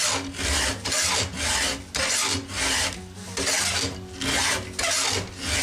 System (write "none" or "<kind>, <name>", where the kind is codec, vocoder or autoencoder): none